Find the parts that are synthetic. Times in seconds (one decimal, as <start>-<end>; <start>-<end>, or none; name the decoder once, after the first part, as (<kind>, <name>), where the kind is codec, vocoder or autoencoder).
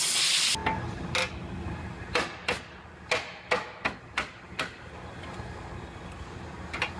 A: none